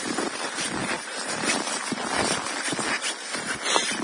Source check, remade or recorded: recorded